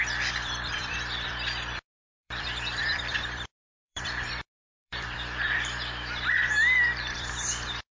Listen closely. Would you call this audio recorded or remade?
remade